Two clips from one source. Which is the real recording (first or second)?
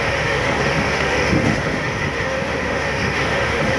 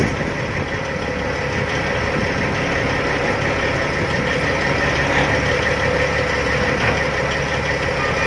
second